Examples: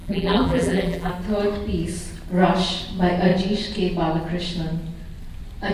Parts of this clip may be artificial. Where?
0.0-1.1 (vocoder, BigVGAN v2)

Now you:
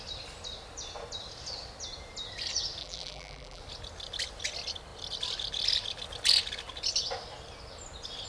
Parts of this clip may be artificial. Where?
2.8-3.6 (vocoder, BigVGAN v2)

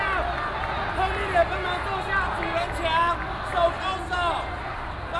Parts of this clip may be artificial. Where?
none